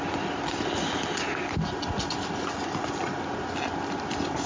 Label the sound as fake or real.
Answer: real